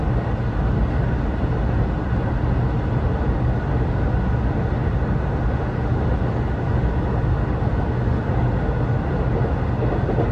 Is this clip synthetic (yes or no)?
no